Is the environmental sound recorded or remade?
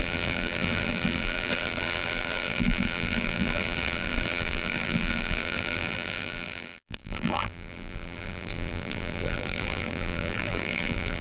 remade